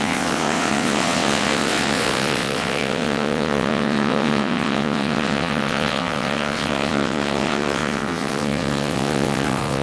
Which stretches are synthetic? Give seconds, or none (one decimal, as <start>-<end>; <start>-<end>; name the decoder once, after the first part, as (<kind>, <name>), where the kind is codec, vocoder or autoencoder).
0.0-9.8 (vocoder, WaveNeXt)